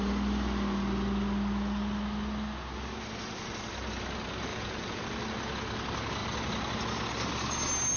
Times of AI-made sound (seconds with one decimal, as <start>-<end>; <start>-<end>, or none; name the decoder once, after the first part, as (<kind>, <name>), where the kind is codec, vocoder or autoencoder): 4.5-5.0 (vocoder, Vocos)